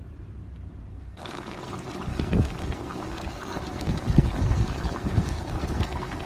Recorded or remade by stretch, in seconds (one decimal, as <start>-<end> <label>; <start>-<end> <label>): 0.0-0.9 recorded; 0.9-1.7 remade; 1.7-2.1 recorded; 2.1-6.3 remade